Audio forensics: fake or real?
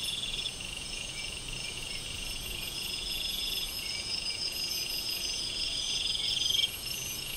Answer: fake